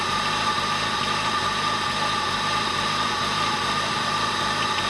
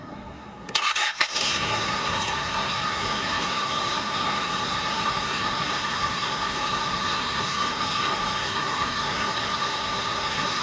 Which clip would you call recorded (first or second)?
first